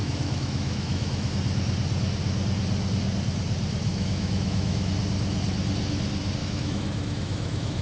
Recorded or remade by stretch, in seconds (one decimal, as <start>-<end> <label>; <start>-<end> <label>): 0.0-1.3 remade; 1.3-3.9 recorded; 3.9-4.9 remade; 4.9-6.4 recorded; 6.4-7.8 remade